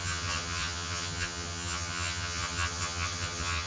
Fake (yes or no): yes